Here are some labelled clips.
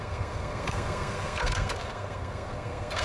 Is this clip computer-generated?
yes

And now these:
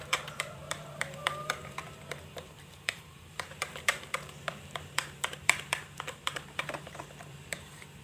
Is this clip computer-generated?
yes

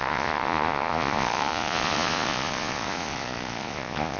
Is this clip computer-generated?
yes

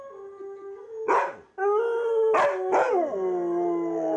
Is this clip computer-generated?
no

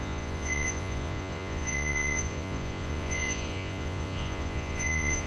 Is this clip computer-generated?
yes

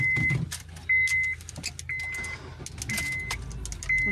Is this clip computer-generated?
no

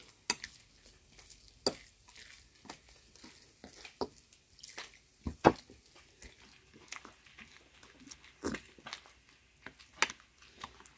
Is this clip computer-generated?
no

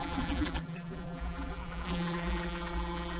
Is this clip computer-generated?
yes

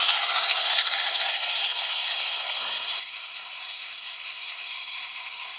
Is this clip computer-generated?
yes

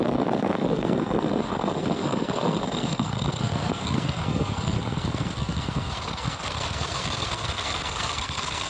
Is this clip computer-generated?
yes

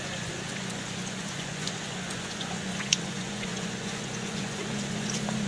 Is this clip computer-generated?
yes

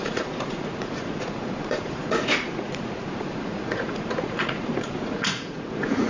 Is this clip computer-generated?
yes